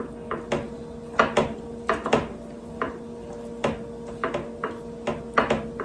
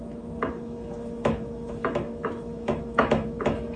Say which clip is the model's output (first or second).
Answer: second